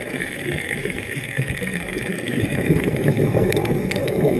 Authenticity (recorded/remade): remade